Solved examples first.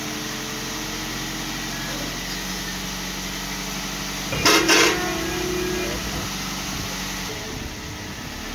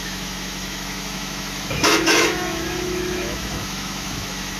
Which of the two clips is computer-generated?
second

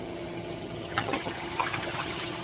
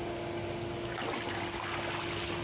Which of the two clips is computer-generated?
first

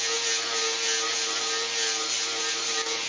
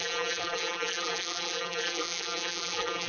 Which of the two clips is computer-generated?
second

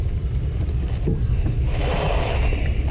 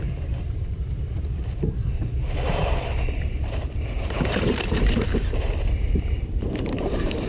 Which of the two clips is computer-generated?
second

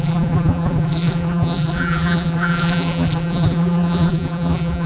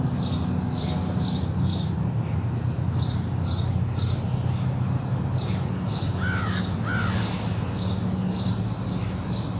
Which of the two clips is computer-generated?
first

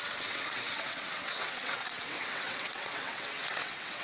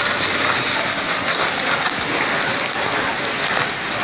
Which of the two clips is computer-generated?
first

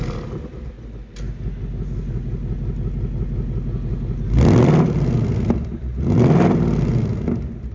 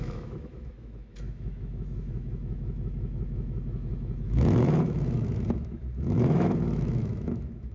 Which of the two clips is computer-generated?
second